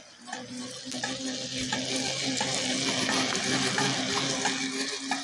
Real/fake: real